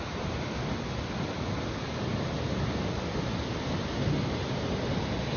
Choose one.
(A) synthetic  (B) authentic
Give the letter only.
B